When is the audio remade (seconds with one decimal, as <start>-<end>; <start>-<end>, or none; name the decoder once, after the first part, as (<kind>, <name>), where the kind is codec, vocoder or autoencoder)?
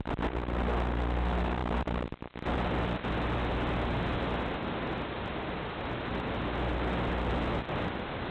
none